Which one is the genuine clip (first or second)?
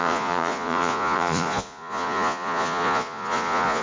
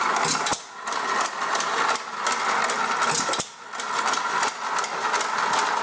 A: second